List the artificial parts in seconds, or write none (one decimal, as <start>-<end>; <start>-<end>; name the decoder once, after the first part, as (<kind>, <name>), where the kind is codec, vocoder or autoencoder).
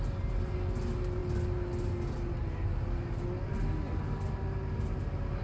none